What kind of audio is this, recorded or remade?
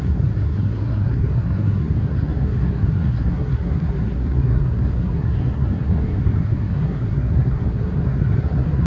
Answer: remade